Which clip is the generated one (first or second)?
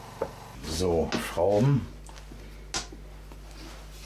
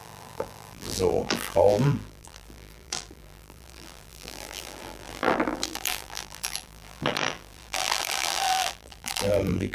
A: second